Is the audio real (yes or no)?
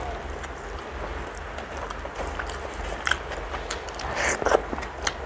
yes